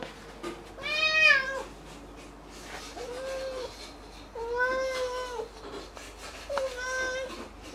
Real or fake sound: real